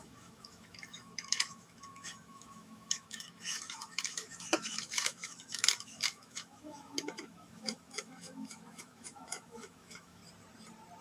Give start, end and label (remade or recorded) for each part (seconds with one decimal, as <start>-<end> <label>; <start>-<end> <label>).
0.0-10.2 remade; 10.2-11.0 recorded